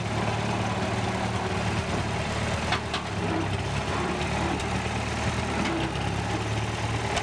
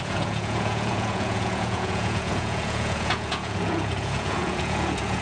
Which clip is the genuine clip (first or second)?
first